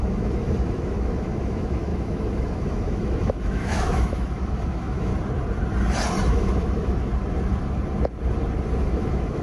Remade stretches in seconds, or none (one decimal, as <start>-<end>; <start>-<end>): 0.0-5.1; 6.3-7.1; 8.8-9.4

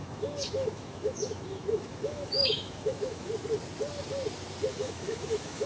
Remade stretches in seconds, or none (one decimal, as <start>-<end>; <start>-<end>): 0.0-3.3; 4.7-5.7

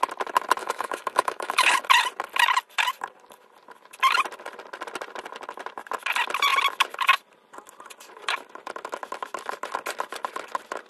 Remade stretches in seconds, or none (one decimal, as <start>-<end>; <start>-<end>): 0.6-1.8

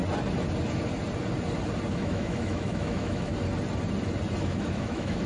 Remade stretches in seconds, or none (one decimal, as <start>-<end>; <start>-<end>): 1.9-3.3; 4.4-5.3